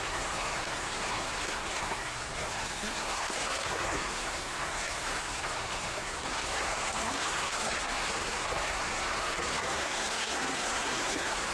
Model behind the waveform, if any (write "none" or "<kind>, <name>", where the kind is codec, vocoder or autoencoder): codec, SNAC